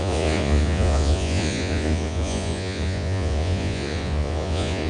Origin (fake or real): fake